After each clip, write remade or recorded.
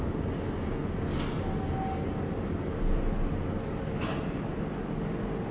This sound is recorded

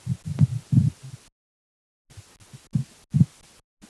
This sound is recorded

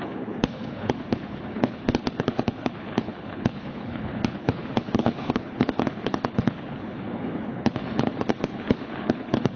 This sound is remade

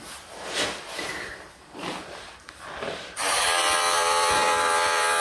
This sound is remade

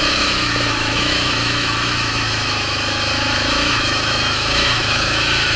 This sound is remade